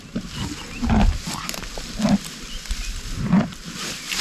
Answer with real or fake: real